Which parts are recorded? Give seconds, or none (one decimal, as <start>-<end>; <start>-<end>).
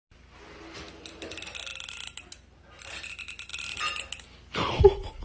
0.0-5.2